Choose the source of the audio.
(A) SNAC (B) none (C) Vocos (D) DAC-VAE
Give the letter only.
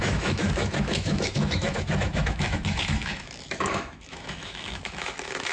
D